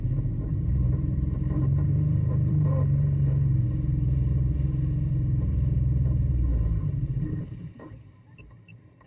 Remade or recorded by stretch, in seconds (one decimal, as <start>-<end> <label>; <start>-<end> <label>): 0.0-9.1 remade